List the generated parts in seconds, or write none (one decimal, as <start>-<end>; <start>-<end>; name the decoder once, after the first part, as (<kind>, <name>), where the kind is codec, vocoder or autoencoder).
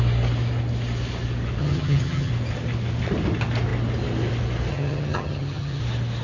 1.6-2.3 (vocoder, HiFi-GAN); 4.7-5.8